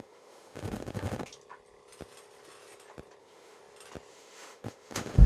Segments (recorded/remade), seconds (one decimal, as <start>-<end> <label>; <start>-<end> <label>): 0.0-1.3 remade; 1.3-3.2 recorded; 3.2-3.6 remade; 3.6-4.1 recorded; 4.1-5.3 remade